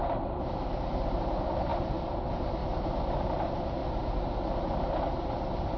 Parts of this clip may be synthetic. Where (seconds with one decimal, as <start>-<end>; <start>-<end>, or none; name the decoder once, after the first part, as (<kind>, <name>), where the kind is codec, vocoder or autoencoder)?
0.0-2.6 (vocoder, BigVGAN v2); 3.2-3.8; 5.3-5.8